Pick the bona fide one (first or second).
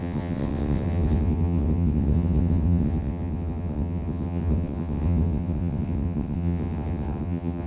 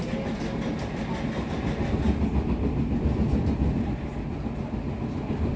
second